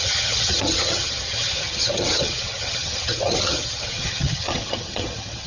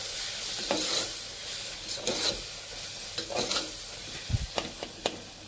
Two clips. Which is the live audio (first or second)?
second